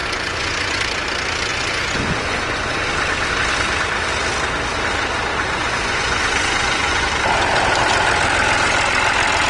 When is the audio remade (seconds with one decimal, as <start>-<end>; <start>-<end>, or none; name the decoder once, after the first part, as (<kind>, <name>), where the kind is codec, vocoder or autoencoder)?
0.0-0.8 (vocoder, Vocos); 1.5-2.9; 5.3-7.1